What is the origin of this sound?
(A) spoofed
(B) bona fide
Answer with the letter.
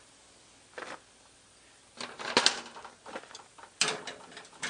B